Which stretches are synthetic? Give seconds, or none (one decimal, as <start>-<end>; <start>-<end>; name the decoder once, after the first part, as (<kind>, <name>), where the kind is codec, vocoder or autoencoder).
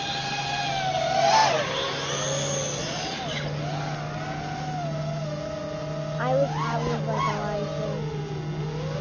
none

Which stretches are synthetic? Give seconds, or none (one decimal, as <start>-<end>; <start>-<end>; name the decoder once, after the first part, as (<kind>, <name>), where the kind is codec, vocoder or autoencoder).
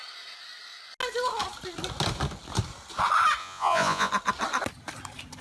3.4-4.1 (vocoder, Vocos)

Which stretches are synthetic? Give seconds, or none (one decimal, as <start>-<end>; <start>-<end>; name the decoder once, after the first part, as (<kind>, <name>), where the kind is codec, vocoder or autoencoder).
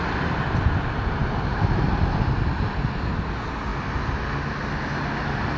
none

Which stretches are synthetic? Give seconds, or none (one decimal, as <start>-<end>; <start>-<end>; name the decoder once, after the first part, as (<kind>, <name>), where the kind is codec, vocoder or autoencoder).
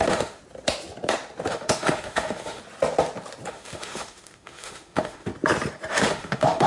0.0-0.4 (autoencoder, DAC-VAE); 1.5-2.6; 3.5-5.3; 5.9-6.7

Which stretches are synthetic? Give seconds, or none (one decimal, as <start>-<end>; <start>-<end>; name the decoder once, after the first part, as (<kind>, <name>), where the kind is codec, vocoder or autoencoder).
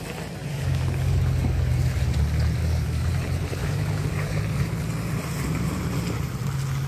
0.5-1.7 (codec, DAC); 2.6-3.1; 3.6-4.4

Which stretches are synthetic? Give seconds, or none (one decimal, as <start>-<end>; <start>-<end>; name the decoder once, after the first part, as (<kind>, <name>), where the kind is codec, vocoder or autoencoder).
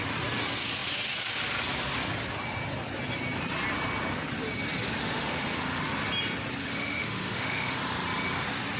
5.0-5.8 (autoencoder, DAC-VAE); 6.6-7.8